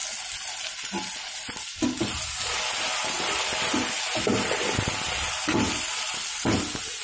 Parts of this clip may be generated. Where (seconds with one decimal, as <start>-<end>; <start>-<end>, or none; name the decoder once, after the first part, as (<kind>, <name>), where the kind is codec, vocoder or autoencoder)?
none